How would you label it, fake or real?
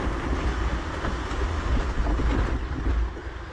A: real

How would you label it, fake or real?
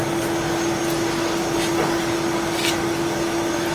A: real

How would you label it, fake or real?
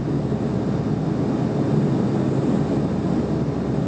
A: real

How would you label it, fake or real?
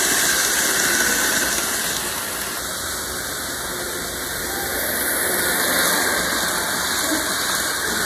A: real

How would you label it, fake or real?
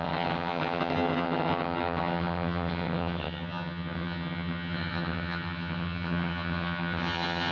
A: fake